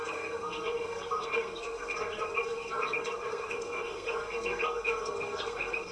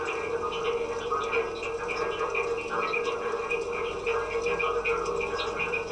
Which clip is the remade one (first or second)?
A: first